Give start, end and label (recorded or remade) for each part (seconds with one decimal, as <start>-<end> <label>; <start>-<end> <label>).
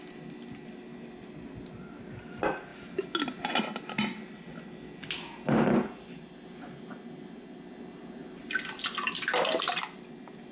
0.0-8.2 recorded; 8.2-9.2 remade; 9.2-10.5 recorded